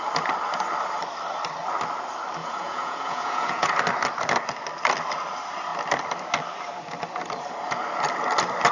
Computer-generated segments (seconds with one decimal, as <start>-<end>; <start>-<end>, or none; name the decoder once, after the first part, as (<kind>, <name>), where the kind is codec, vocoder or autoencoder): 2.4-3.7 (vocoder, Vocos)